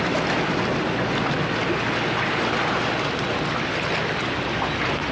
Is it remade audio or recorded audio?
recorded